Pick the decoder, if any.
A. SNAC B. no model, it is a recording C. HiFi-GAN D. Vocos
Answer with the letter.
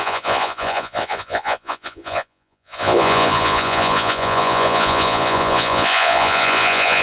D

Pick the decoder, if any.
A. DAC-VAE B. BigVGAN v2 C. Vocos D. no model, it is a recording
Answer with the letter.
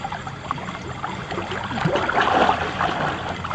D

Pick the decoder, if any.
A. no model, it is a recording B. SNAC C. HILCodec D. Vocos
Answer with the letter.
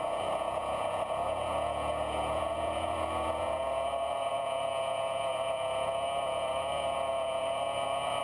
D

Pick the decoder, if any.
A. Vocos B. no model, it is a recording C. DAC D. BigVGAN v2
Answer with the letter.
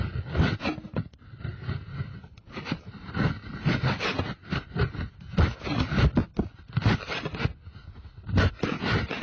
B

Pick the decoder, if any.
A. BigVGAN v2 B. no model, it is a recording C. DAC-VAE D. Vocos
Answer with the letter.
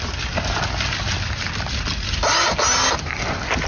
B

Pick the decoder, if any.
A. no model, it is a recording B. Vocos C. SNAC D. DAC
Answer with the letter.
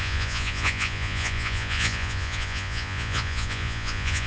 B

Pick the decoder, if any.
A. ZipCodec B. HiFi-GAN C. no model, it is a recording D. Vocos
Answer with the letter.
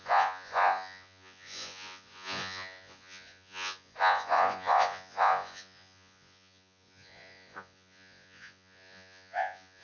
D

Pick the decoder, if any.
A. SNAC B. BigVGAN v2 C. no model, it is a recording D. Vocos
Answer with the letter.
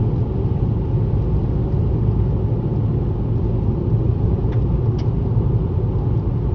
C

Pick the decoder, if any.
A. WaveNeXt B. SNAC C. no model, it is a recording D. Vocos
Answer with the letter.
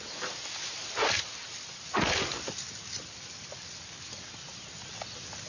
C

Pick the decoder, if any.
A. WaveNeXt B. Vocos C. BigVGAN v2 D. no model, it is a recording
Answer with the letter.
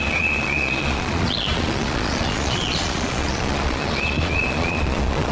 B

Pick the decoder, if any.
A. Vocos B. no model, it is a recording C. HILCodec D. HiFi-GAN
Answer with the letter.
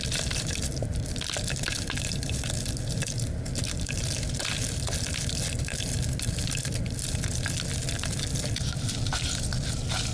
B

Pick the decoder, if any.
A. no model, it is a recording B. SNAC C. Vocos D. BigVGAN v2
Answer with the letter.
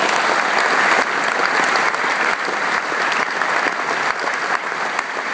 A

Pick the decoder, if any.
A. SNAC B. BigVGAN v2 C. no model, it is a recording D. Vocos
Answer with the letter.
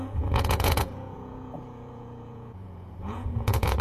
D